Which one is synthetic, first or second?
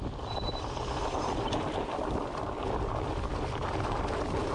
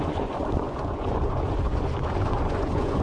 second